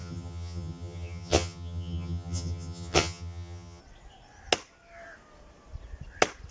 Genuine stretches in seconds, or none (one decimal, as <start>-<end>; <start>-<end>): 3.8-6.5